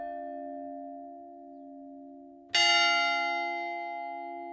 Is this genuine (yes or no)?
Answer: yes